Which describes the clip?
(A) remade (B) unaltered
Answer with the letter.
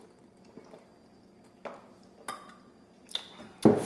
B